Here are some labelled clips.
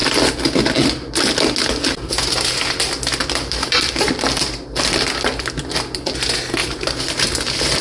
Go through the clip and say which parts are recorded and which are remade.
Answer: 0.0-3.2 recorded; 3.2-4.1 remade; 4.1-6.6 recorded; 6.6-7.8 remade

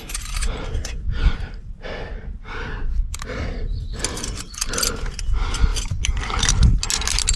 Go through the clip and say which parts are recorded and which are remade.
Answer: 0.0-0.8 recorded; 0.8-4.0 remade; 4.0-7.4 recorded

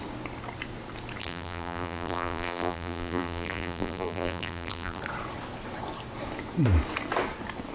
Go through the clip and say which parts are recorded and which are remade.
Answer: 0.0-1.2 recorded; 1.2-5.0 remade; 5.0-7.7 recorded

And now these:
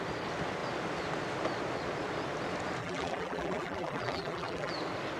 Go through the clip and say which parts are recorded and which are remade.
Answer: 0.0-2.8 recorded; 2.8-4.7 remade; 4.7-5.2 recorded

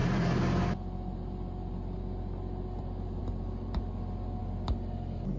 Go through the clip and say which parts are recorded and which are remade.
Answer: 0.0-3.2 recorded; 3.2-4.4 remade; 4.4-5.4 recorded

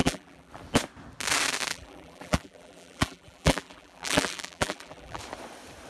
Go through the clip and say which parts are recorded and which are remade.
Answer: 0.0-0.5 remade; 0.5-1.7 recorded; 1.7-5.2 remade; 5.2-5.9 recorded

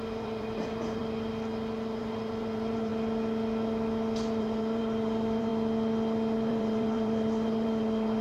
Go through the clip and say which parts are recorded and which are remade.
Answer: 0.0-1.0 remade; 1.0-2.0 recorded; 2.0-2.9 remade; 2.9-4.4 recorded; 4.4-5.5 remade; 5.5-6.5 recorded; 6.5-8.2 remade